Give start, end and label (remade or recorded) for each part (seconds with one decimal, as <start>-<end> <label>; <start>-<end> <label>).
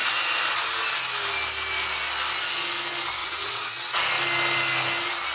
0.0-3.2 recorded; 3.2-4.0 remade; 4.0-5.3 recorded